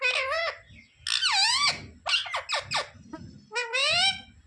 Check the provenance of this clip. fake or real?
real